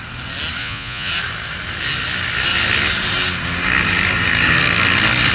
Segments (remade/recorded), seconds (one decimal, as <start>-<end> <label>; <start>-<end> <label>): 0.0-0.6 recorded; 0.6-1.1 remade; 1.1-5.3 recorded